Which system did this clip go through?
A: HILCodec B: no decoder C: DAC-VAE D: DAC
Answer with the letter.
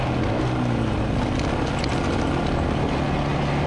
B